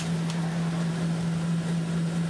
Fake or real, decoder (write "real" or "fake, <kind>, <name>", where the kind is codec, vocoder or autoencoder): real